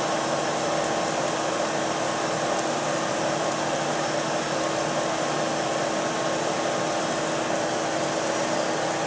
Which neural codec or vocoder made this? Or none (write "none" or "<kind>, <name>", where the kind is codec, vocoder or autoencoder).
none